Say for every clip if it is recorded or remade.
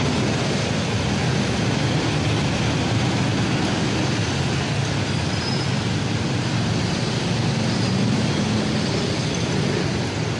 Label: recorded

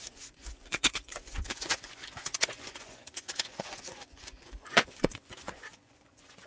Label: remade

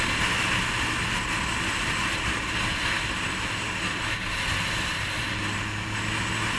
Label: recorded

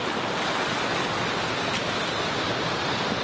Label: recorded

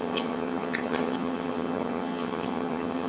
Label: remade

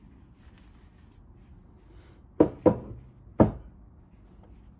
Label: recorded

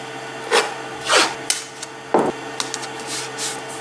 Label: recorded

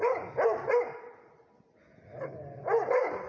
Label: recorded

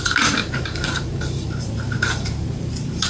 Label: remade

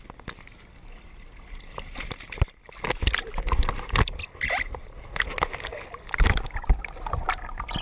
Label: recorded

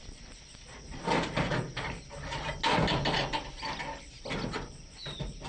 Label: recorded